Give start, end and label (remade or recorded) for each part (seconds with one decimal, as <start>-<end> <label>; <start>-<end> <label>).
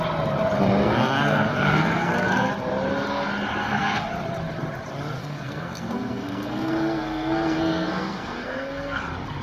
0.0-0.8 recorded; 0.8-2.5 remade; 2.5-3.6 recorded; 3.6-4.1 remade; 4.1-5.2 recorded; 5.2-9.0 remade; 9.0-9.4 recorded